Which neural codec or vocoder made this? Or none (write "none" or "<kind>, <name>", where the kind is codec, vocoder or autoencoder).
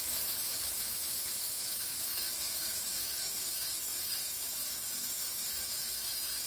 autoencoder, DAC-VAE